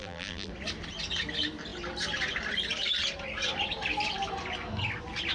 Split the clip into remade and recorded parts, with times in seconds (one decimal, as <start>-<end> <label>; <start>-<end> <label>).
0.0-0.5 remade; 0.5-5.3 recorded